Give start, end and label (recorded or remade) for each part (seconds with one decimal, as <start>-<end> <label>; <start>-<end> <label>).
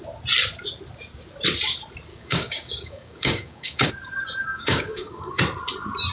0.0-2.1 recorded; 2.1-3.9 remade; 3.9-4.4 recorded; 4.4-5.4 remade; 5.4-6.1 recorded